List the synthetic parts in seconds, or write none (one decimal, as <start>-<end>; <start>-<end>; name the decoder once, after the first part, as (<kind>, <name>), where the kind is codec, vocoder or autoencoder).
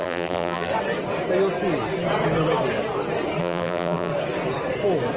0.0-0.7 (vocoder, BigVGAN v2); 3.4-4.1